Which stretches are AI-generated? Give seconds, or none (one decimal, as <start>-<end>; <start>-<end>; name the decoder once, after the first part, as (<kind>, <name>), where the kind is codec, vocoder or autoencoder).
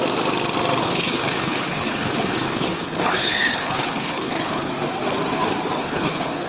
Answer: 0.8-4.7 (codec, HILCodec); 5.8-6.5